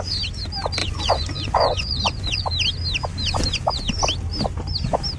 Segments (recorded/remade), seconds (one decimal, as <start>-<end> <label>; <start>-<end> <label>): 0.0-0.8 recorded; 0.8-2.4 remade; 2.4-5.2 recorded